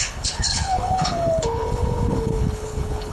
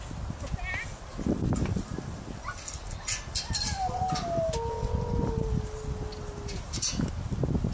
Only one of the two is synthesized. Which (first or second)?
first